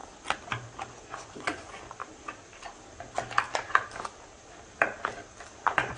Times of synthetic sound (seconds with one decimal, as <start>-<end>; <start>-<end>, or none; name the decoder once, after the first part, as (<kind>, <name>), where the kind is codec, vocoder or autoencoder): 1.0-2.0 (vocoder, Vocos); 5.6-6.0